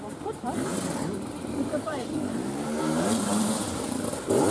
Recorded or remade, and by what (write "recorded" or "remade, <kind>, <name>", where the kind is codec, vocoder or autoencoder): remade, vocoder, BigVGAN v2